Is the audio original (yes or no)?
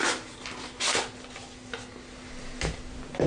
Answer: yes